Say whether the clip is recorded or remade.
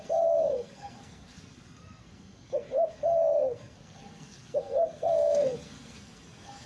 remade